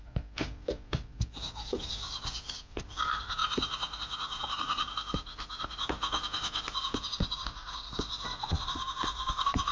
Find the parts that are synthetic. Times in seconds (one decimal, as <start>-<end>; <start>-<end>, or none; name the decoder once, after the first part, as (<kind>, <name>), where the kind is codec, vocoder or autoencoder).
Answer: 0.0-3.4 (vocoder, BigVGAN v2); 5.6-9.7